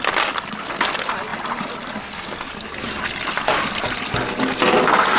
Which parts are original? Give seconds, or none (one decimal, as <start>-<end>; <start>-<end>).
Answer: 0.0-5.2